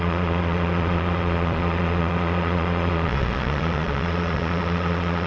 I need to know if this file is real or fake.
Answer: fake